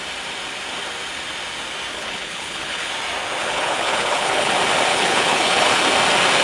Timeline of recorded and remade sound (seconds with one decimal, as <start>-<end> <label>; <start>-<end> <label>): 0.0-1.9 recorded; 1.9-2.9 remade; 2.9-3.4 recorded; 3.4-4.5 remade; 4.5-4.9 recorded; 4.9-5.8 remade; 5.8-6.4 recorded